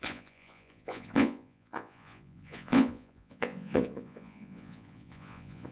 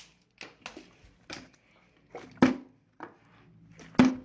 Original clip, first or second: second